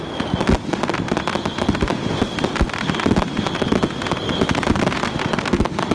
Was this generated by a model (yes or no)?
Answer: no